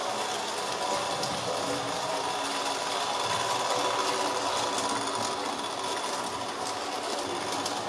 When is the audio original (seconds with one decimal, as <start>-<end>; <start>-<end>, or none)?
0.0-7.9